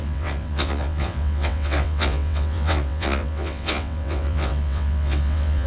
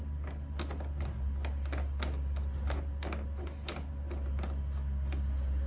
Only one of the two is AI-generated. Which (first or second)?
first